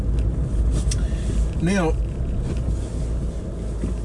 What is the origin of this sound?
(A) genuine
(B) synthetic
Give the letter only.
A